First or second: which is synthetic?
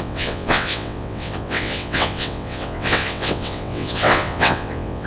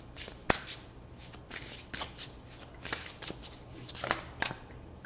first